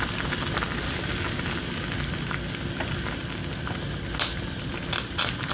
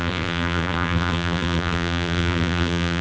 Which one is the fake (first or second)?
second